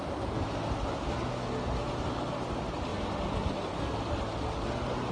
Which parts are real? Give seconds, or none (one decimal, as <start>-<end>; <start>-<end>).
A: 0.0-5.1